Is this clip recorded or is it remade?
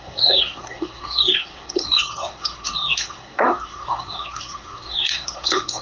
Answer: remade